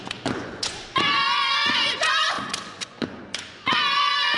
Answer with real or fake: fake